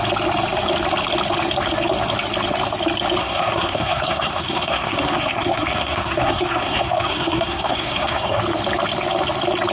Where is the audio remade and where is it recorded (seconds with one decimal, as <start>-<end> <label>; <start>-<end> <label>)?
0.0-3.2 recorded; 3.2-8.4 remade; 8.4-9.7 recorded